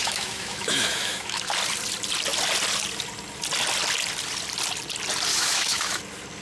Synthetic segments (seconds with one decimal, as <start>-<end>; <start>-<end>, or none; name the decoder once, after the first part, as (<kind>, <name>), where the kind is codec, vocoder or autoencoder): 0.0-1.5 (autoencoder, DAC-VAE); 5.3-6.0